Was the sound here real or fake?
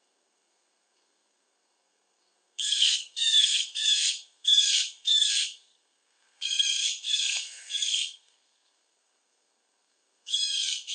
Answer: fake